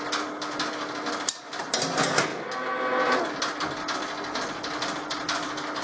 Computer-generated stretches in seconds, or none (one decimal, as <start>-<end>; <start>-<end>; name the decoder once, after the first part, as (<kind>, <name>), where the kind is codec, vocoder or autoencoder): none